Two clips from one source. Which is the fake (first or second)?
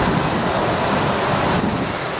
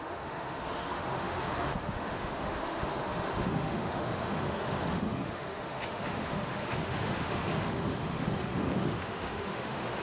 second